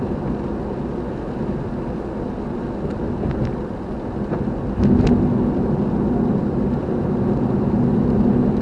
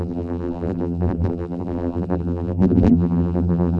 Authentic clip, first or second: first